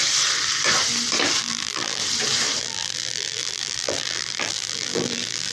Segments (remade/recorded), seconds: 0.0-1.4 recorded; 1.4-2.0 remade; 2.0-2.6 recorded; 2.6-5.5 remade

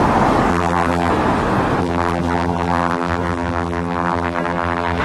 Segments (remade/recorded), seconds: 0.0-0.5 recorded; 0.5-1.1 remade; 1.1-1.8 recorded; 1.8-5.0 remade

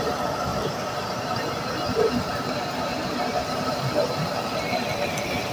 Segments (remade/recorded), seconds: 0.0-0.5 recorded; 0.5-3.8 remade; 3.8-5.5 recorded

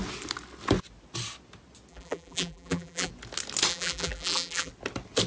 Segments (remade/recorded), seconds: 0.0-1.9 recorded; 1.9-3.1 remade; 3.1-3.7 recorded; 3.7-4.7 remade; 4.7-5.3 recorded

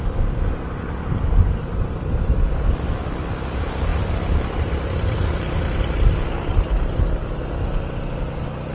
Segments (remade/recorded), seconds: 0.0-3.5 remade; 3.5-3.9 recorded; 3.9-7.0 remade; 7.0-8.7 recorded